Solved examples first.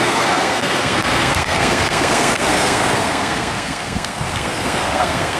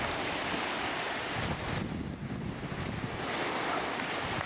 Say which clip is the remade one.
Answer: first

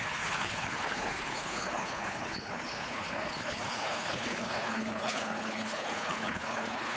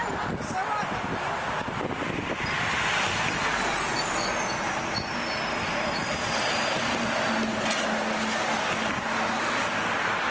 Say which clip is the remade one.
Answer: first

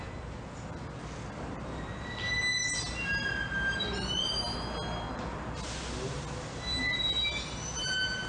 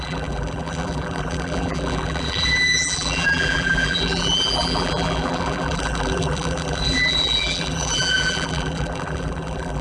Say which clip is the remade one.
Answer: second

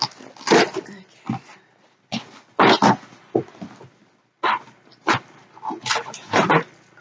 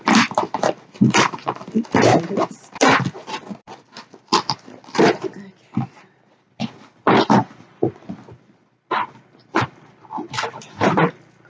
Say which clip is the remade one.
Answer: second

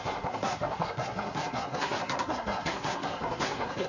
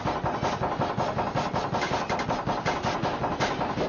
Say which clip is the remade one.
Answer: first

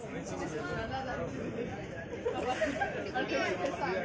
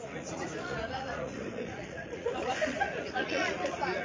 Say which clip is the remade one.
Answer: second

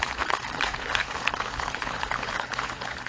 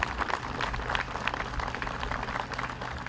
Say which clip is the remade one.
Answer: first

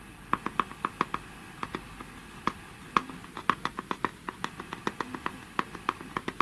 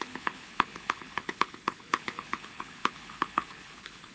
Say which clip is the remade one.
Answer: second